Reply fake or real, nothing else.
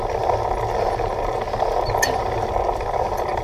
real